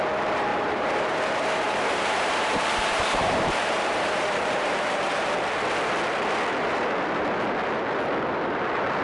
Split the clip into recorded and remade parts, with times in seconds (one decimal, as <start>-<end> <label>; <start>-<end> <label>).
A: 0.0-0.5 recorded; 0.5-5.4 remade; 5.4-9.0 recorded